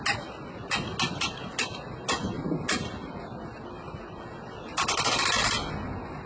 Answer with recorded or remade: recorded